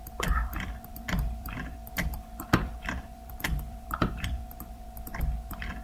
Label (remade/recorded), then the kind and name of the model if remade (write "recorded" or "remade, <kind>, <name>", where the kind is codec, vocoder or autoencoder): remade, vocoder, BigVGAN v2